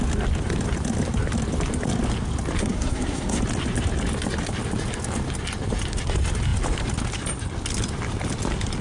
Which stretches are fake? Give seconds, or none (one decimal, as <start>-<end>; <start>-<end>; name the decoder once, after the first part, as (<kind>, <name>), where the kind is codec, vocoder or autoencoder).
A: 2.6-3.4 (codec, SNAC)